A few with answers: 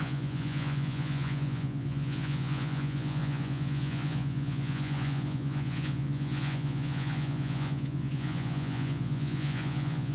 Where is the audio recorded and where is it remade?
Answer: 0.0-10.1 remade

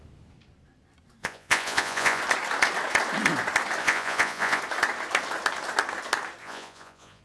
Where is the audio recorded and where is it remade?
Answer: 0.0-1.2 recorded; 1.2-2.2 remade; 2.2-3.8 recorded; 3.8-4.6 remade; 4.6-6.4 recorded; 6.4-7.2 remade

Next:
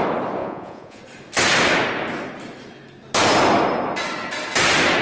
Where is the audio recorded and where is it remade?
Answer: 0.0-0.4 recorded; 0.4-1.0 remade; 1.0-5.0 recorded

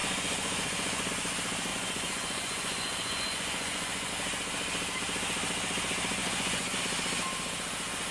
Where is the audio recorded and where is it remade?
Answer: 0.0-1.1 remade; 1.1-1.7 recorded; 1.7-4.1 remade; 4.1-6.2 recorded; 6.2-6.8 remade; 6.8-8.1 recorded